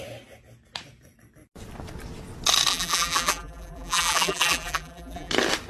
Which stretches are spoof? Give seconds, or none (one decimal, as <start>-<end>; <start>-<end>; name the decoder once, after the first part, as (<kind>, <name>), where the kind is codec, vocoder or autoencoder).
2.7-5.3 (vocoder, BigVGAN v2)